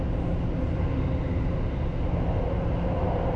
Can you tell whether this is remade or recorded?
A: recorded